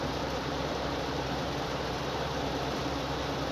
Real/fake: fake